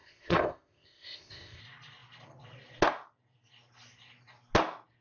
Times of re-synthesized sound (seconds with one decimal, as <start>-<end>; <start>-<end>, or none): 0.0-1.6